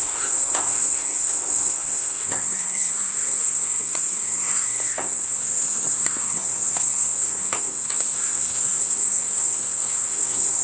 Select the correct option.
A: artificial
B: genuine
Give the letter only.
A